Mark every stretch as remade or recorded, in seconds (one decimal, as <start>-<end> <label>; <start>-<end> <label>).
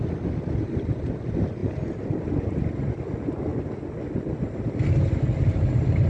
0.0-6.1 recorded